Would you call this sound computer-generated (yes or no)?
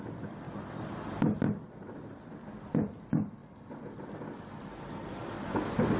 no